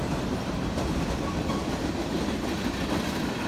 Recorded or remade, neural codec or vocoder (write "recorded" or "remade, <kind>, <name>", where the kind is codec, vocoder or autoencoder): remade, vocoder, BigVGAN v2